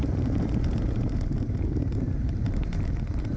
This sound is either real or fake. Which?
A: fake